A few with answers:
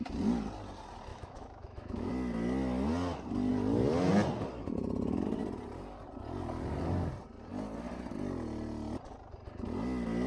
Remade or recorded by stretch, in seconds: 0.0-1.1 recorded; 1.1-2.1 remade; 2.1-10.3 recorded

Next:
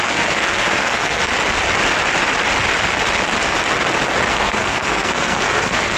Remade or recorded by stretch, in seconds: 0.0-1.3 remade; 1.3-4.3 recorded; 4.3-6.0 remade

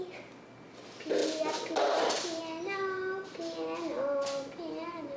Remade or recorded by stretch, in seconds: 0.0-5.2 recorded

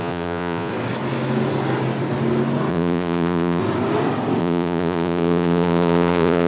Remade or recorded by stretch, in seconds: 0.0-0.7 remade; 0.7-2.7 recorded; 2.7-3.6 remade; 3.6-4.4 recorded; 4.4-6.5 remade

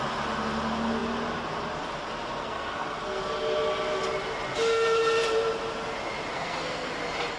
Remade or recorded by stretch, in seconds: 0.0-2.4 recorded; 2.4-3.2 remade; 3.2-6.3 recorded; 6.3-6.9 remade; 6.9-7.4 recorded

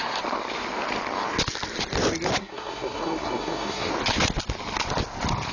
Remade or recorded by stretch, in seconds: 0.0-2.4 recorded; 2.4-3.9 remade; 3.9-5.5 recorded

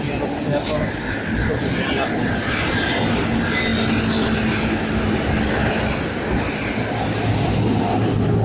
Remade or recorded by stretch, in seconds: 0.0-8.4 recorded

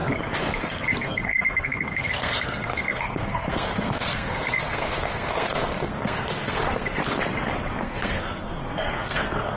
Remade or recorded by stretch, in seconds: 0.0-0.6 recorded; 0.6-7.0 remade; 7.0-7.8 recorded; 7.8-9.6 remade